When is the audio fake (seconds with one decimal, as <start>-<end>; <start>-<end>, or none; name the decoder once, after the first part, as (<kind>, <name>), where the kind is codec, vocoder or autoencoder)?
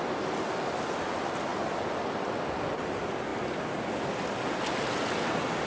none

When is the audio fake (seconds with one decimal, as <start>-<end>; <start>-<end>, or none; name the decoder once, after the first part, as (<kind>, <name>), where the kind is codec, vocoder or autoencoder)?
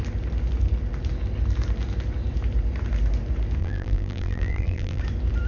3.6-5.0 (vocoder, BigVGAN v2)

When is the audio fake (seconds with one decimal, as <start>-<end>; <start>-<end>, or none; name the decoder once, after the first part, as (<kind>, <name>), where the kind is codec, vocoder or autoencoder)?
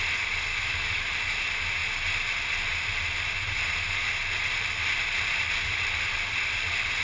0.5-1.0 (autoencoder, DAC-VAE)